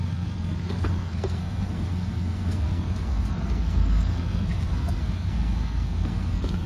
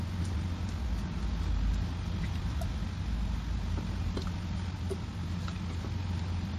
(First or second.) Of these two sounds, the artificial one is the first